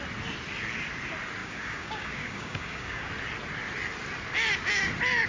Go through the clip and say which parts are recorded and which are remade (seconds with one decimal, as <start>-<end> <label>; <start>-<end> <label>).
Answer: 0.0-1.4 recorded; 1.4-3.1 remade; 3.1-5.3 recorded